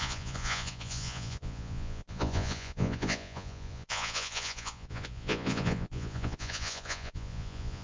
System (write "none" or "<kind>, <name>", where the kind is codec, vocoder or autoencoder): vocoder, Vocos